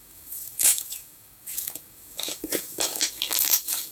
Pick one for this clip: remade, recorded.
remade